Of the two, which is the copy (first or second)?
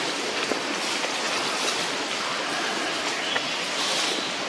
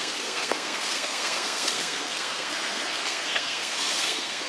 second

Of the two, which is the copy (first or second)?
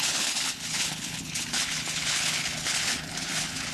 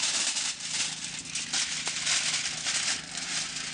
first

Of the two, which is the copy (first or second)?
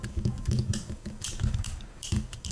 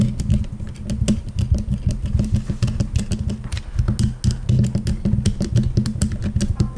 first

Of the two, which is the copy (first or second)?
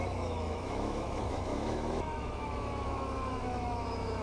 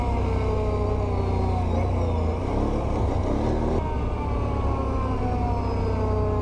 first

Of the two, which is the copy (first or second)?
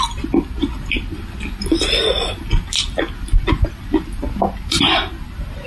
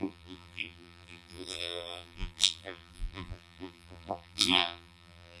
second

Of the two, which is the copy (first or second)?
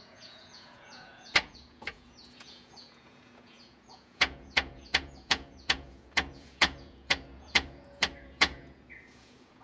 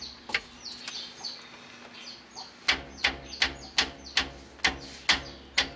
first